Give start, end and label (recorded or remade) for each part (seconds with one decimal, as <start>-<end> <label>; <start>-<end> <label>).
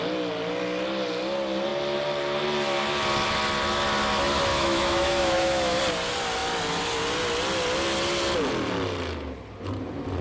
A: 0.0-4.5 recorded; 4.5-5.8 remade; 5.8-10.2 recorded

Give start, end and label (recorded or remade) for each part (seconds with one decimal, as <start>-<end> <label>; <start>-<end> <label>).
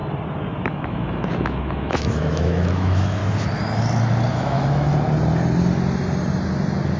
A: 0.0-0.7 recorded; 0.7-3.2 remade; 3.2-4.3 recorded; 4.3-4.9 remade; 4.9-7.0 recorded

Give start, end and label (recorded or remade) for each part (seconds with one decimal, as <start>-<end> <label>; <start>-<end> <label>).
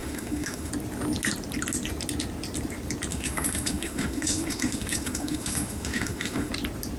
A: 0.0-0.7 remade; 0.7-3.1 recorded; 3.1-6.5 remade; 6.5-7.0 recorded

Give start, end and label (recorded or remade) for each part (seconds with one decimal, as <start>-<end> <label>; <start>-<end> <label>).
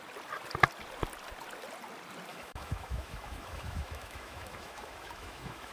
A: 0.0-2.3 recorded; 2.3-5.7 remade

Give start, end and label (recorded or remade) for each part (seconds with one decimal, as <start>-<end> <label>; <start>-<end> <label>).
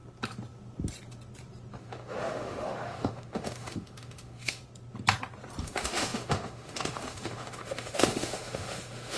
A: 0.0-1.8 recorded; 1.8-4.6 remade; 4.6-5.6 recorded; 5.6-9.2 remade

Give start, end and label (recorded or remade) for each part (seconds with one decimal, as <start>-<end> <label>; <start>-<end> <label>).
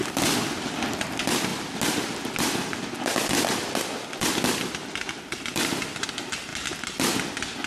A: 0.0-7.7 recorded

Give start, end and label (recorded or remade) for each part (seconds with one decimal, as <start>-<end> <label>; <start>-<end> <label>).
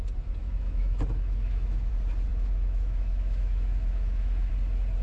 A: 0.0-0.4 recorded; 0.4-1.9 remade; 1.9-2.3 recorded; 2.3-4.5 remade; 4.5-5.0 recorded